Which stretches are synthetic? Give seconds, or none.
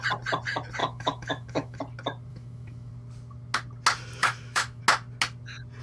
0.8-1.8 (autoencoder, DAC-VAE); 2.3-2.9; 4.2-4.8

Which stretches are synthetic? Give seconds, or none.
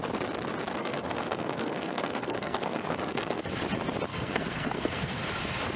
0.8-3.4 (codec, SNAC); 4.1-5.2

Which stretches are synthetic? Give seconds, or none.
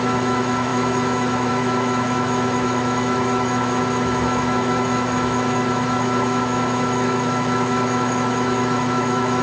0.0-9.4 (autoencoder, DAC-VAE)